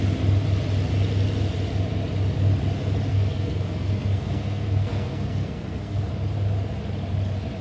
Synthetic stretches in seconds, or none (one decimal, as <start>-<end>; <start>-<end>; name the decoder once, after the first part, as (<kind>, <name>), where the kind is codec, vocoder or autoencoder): 3.1-6.1 (codec, SNAC)